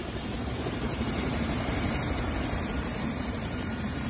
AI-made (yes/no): yes